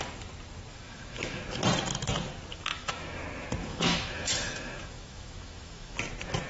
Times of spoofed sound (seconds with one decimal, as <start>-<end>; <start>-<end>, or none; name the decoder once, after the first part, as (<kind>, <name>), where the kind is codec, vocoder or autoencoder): 0.7-1.4 (autoencoder, DAC-VAE); 2.5-3.2; 3.6-6.0